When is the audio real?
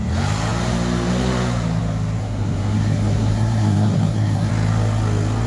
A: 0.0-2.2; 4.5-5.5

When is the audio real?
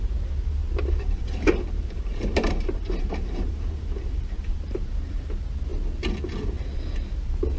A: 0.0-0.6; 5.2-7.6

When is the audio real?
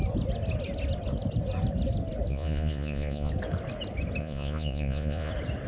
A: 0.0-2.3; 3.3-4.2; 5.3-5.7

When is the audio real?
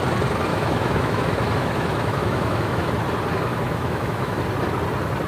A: 0.0-0.5; 2.9-3.5; 4.4-5.3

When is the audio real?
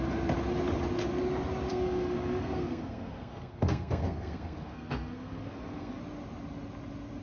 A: 0.0-1.7; 6.0-7.2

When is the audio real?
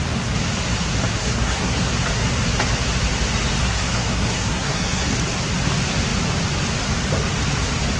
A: 0.0-1.2; 1.9-3.6; 5.1-8.0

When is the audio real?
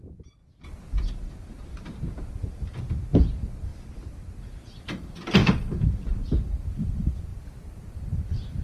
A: 0.4-1.1; 3.7-4.4; 7.3-7.9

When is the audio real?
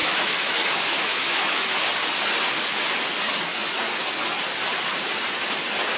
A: 1.7-6.0